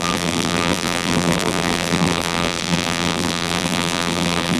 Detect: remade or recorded remade